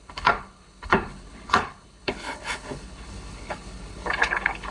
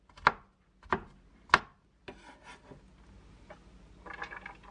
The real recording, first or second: second